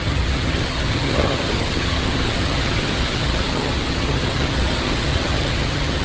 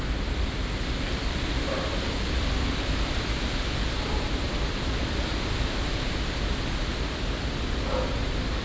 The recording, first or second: second